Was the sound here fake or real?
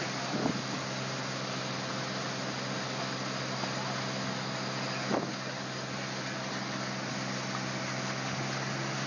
real